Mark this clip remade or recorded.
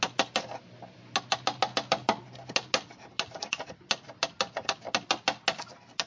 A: recorded